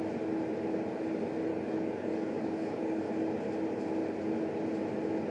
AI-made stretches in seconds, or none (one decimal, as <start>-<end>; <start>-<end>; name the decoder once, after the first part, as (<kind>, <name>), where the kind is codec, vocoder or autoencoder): 1.5-3.1 (codec, DAC)